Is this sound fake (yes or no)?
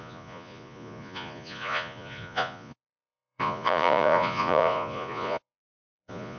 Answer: yes